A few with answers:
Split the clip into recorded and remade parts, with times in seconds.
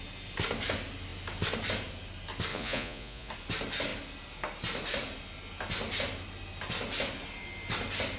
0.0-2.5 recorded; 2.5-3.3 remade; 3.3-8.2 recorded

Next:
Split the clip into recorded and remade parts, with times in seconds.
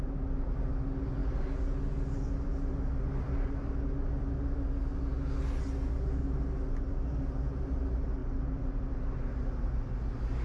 0.0-10.4 recorded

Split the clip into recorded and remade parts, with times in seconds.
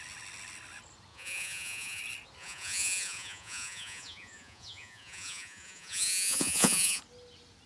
0.0-1.1 recorded; 1.1-2.0 remade; 2.0-2.4 recorded; 2.4-7.0 remade; 7.0-7.7 recorded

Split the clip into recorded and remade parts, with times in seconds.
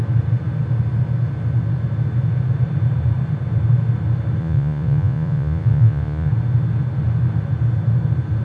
0.0-4.4 recorded; 4.4-6.3 remade; 6.3-8.4 recorded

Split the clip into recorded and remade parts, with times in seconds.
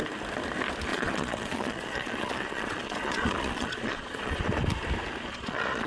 0.0-0.9 recorded; 0.9-4.4 remade; 4.4-5.3 recorded; 5.3-5.9 remade